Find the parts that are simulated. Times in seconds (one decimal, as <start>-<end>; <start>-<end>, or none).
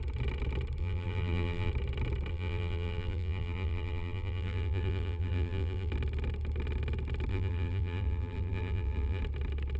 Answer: 0.8-1.7; 2.3-5.9; 7.3-9.2